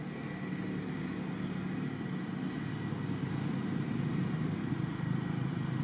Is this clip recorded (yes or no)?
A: yes